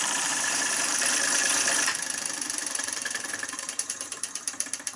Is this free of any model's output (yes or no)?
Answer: no